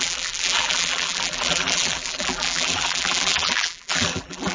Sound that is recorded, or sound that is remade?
remade